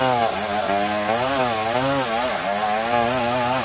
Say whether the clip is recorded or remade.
recorded